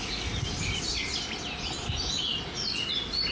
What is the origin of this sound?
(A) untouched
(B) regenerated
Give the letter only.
A